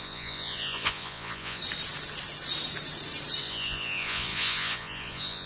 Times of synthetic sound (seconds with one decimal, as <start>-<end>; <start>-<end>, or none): 0.0-1.6; 3.4-5.5